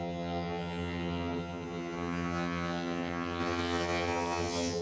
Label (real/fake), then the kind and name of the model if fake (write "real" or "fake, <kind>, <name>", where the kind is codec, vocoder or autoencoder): fake, vocoder, HiFi-GAN